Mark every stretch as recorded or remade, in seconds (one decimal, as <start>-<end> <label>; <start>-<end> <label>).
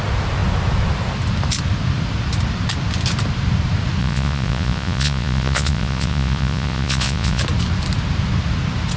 0.0-4.0 recorded; 4.0-7.4 remade; 7.4-9.0 recorded